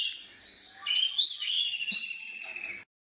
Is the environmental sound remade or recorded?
recorded